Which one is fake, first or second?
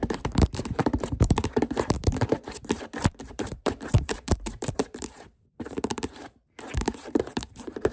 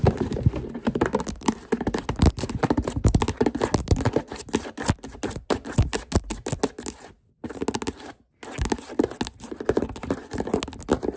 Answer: first